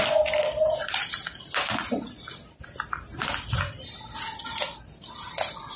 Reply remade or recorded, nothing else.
recorded